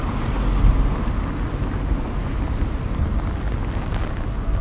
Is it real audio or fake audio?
real